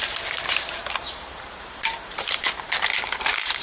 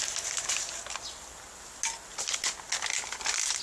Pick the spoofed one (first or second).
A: first